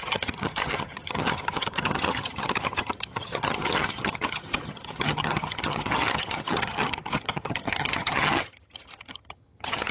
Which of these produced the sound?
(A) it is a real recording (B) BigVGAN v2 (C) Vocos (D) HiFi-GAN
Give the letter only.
D